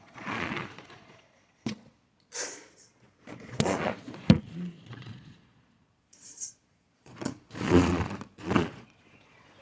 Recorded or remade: remade